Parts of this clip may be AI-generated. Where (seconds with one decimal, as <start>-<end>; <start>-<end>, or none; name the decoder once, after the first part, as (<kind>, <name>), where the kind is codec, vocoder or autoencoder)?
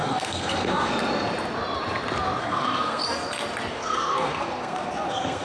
0.0-0.9 (codec, SNAC); 2.4-3.0; 3.7-5.4